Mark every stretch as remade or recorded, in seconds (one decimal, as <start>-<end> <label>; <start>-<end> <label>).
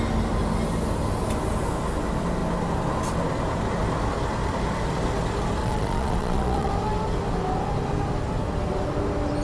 0.0-5.6 recorded; 5.6-6.7 remade; 6.7-9.4 recorded